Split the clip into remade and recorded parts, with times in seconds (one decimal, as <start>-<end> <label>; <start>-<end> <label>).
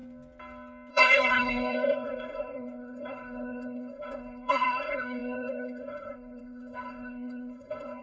0.0-0.9 recorded; 0.9-8.0 remade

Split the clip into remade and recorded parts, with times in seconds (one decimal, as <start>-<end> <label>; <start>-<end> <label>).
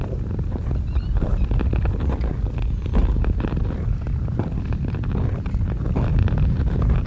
0.0-7.1 recorded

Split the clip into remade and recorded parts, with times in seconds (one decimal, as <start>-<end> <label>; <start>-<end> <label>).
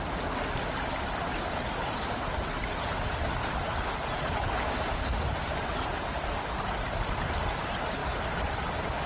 0.0-9.1 recorded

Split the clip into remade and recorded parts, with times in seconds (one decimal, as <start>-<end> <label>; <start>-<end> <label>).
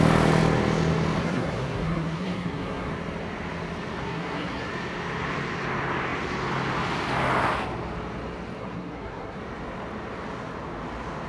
0.0-1.2 recorded; 1.2-2.9 remade; 2.9-4.0 recorded; 4.0-4.7 remade; 4.7-8.6 recorded; 8.6-9.4 remade; 9.4-11.3 recorded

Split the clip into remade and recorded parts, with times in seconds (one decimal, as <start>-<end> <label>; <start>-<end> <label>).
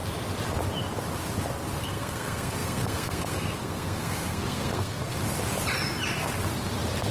0.0-1.8 recorded; 1.8-5.2 remade; 5.2-7.1 recorded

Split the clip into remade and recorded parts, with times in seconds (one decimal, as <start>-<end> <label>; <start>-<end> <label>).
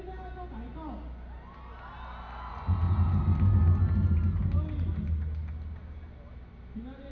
0.0-7.1 recorded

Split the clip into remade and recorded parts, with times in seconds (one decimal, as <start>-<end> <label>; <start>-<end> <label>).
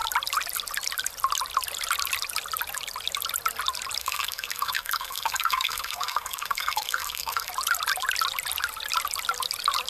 0.0-4.0 recorded; 4.0-7.5 remade; 7.5-9.9 recorded